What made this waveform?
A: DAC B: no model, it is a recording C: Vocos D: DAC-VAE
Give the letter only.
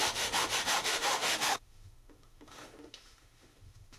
D